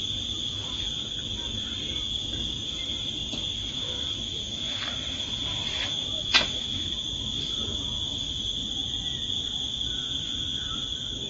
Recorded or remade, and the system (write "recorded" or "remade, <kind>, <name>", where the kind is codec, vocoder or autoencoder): recorded